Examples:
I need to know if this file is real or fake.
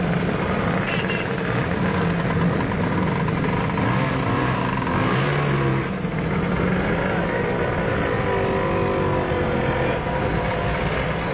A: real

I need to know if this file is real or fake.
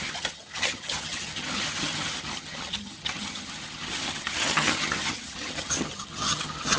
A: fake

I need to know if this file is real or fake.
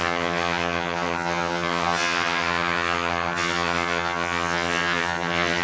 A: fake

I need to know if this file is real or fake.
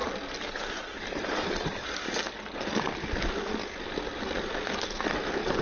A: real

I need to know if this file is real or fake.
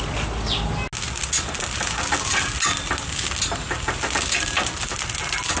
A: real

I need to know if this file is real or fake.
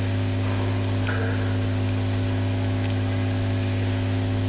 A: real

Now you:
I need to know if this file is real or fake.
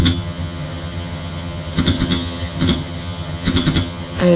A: fake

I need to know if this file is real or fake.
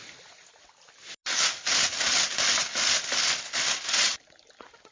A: real